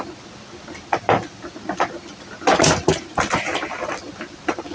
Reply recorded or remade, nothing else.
recorded